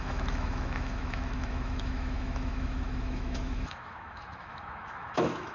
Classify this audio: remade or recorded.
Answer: remade